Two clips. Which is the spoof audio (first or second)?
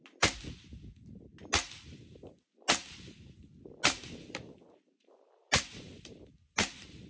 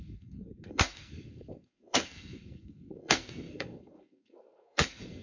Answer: second